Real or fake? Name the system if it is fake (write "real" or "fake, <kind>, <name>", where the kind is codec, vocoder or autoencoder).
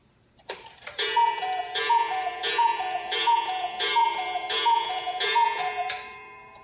fake, vocoder, BigVGAN v2